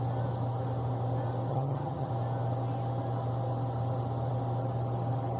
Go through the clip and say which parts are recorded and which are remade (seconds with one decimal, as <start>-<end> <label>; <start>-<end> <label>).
0.0-1.5 recorded; 1.5-2.1 remade; 2.1-5.4 recorded